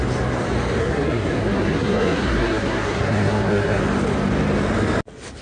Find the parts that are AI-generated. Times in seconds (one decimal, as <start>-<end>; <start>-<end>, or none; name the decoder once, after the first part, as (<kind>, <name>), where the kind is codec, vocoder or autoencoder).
0.8-3.8 (codec, SNAC)